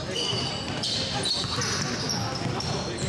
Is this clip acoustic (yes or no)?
yes